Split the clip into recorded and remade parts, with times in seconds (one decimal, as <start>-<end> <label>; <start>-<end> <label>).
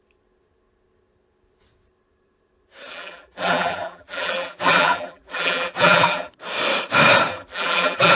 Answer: 0.0-2.9 recorded; 2.9-6.3 remade; 6.3-7.3 recorded; 7.3-8.1 remade